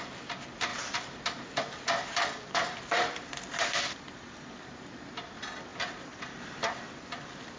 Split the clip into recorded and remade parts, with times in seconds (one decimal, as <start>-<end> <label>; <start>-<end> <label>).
0.0-0.7 recorded; 0.7-4.9 remade; 4.9-5.7 recorded; 5.7-7.6 remade